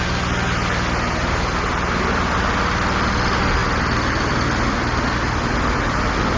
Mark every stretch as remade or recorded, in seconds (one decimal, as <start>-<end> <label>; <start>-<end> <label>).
0.0-6.4 recorded